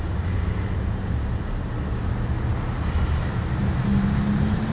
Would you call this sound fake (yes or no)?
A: no